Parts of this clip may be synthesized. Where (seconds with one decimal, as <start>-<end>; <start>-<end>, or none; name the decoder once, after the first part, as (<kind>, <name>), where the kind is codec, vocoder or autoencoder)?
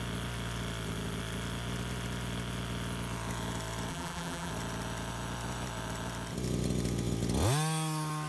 3.9-4.5 (vocoder, BigVGAN v2)